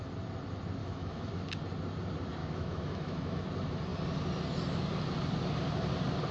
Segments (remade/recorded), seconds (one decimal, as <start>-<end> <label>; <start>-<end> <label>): 0.0-0.8 recorded; 0.8-1.3 remade; 1.3-2.4 recorded; 2.4-3.4 remade; 3.4-6.3 recorded